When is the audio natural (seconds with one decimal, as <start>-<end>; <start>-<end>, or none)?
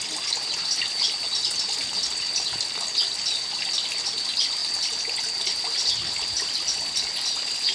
0.0-7.7